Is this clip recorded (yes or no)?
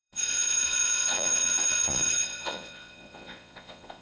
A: no